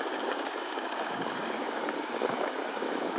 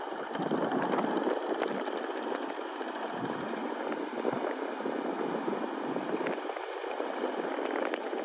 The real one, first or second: second